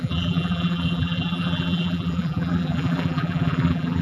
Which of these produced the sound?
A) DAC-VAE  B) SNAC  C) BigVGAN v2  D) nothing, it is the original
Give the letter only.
C